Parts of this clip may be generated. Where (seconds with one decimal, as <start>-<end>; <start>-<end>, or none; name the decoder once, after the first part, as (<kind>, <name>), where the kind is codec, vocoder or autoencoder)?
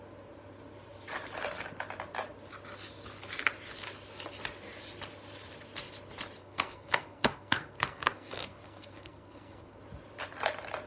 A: 6.4-9.8 (codec, SNAC)